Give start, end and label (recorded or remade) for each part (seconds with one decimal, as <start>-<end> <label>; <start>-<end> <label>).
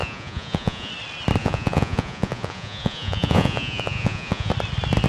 0.0-0.9 remade; 0.9-1.4 recorded; 1.4-4.5 remade; 4.5-5.1 recorded